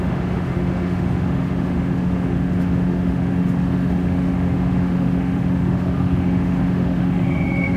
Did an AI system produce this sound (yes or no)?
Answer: yes